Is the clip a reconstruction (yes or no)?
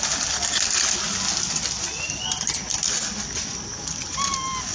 no